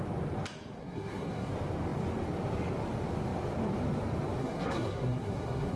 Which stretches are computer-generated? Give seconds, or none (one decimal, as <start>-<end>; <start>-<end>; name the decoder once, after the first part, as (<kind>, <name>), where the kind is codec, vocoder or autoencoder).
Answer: 0.8-1.5 (codec, SNAC); 4.4-5.8